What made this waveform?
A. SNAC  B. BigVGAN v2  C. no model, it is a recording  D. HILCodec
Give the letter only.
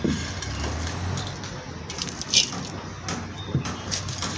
C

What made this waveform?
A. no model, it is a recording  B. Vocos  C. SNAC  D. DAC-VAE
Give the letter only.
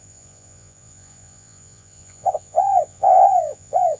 B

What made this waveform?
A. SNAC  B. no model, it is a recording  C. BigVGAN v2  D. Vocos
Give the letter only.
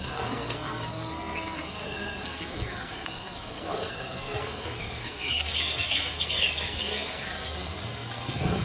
A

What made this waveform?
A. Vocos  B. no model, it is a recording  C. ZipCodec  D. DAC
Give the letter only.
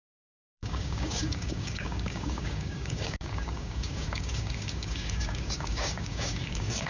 D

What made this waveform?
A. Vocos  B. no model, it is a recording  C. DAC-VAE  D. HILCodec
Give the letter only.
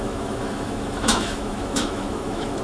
C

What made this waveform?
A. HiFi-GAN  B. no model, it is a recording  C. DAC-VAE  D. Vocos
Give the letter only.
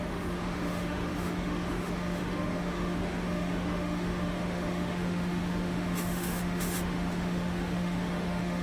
C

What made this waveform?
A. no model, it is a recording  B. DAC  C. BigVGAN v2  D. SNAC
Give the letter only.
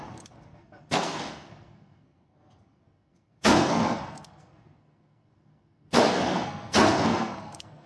D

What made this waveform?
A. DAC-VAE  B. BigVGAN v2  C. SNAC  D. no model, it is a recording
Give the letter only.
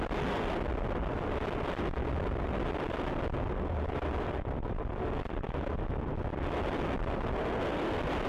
D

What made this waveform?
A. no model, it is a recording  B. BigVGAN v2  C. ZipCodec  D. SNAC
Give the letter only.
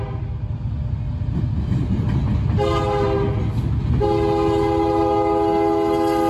A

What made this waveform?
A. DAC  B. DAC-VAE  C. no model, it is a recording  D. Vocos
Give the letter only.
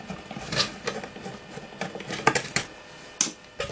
C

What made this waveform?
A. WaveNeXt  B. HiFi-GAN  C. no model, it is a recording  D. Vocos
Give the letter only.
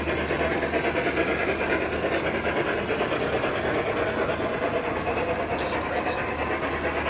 C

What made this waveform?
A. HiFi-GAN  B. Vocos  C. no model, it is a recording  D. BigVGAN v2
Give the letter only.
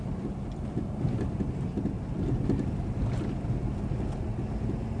C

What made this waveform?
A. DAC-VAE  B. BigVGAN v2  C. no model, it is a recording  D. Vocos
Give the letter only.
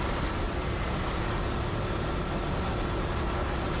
C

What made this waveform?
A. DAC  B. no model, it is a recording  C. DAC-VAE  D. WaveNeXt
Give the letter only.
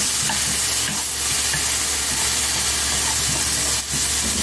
B